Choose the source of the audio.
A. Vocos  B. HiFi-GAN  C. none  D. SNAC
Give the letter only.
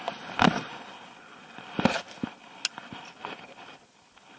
C